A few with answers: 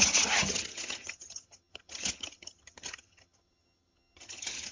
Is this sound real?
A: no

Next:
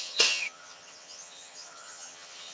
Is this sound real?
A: no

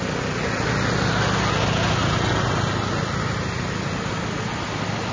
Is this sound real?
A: yes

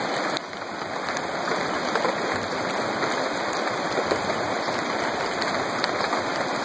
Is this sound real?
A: yes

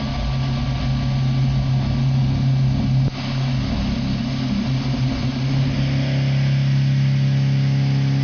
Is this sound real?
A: yes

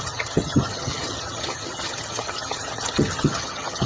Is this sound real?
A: no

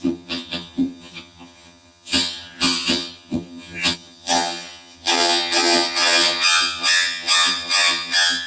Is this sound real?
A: no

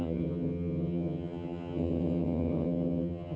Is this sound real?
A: no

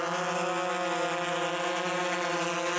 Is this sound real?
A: yes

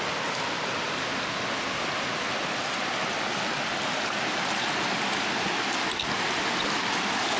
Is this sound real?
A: yes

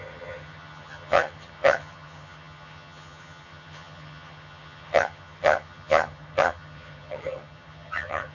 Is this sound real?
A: no